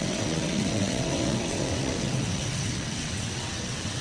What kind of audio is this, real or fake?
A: fake